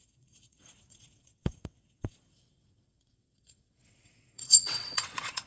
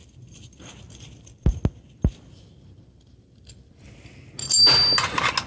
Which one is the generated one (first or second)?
first